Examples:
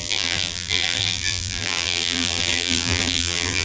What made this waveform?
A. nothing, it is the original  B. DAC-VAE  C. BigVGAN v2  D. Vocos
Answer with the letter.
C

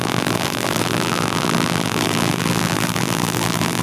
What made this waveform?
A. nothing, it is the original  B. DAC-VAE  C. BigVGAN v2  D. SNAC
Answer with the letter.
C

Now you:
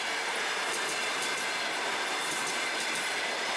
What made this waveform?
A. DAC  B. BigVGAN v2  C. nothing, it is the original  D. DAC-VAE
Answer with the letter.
C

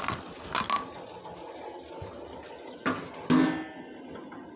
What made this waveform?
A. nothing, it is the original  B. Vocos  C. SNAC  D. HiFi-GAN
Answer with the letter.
A